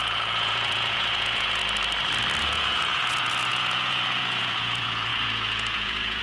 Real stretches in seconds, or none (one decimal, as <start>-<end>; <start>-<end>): 1.6-2.4